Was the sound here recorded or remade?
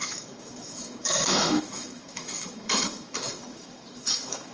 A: remade